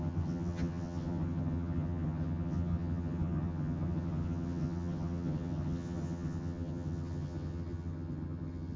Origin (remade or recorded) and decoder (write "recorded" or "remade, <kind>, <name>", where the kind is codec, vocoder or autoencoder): remade, vocoder, HiFi-GAN